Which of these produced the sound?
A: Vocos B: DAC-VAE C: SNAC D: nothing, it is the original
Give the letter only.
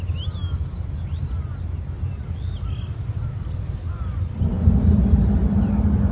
D